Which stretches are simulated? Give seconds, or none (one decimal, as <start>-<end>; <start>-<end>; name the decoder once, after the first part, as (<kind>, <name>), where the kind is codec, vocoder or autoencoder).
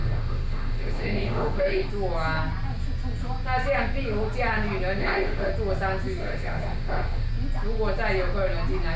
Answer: 0.0-1.9 (autoencoder, DAC-VAE); 5.0-5.5; 6.2-7.3